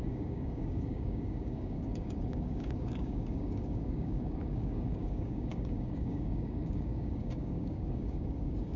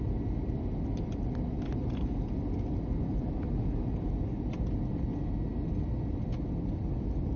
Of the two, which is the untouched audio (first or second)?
second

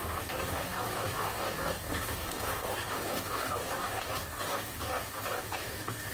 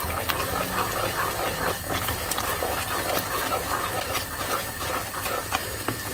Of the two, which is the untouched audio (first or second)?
second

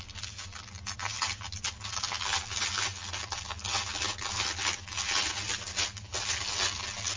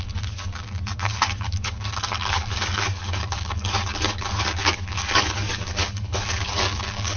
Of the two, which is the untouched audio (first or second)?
first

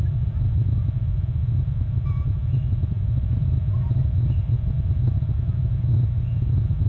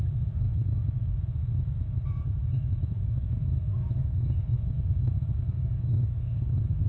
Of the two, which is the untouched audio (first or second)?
first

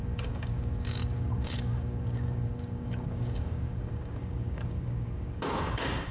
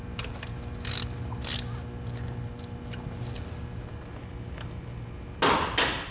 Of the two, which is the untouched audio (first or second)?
second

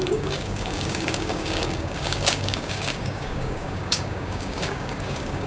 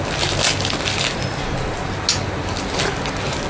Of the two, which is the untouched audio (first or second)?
second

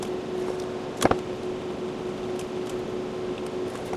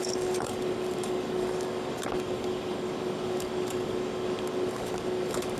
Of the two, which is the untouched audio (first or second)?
first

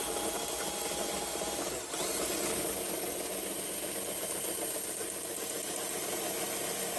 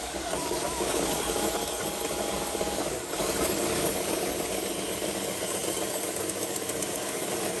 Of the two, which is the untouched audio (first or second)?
first